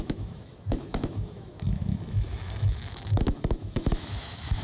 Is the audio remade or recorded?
remade